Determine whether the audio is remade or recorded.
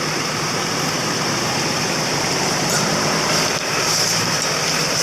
remade